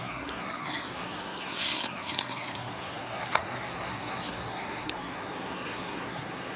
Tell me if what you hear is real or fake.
fake